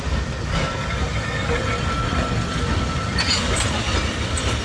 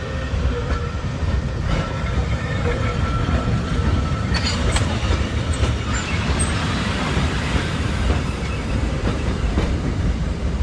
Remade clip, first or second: second